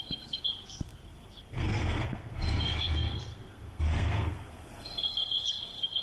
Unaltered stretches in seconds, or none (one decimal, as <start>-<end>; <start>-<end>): none